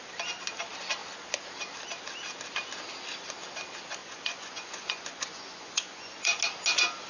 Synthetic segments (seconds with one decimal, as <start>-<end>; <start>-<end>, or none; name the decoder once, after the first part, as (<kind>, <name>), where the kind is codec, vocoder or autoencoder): 4.0-6.4 (vocoder, Vocos)